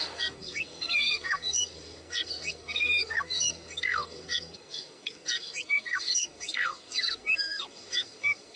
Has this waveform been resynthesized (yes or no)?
yes